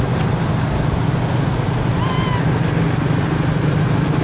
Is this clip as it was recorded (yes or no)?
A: yes